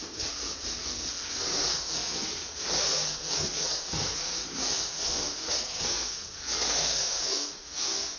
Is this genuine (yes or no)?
no